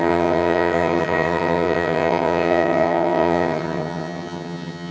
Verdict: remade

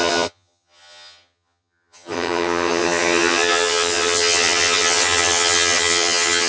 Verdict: remade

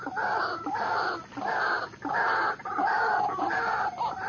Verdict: recorded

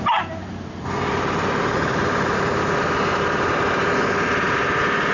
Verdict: recorded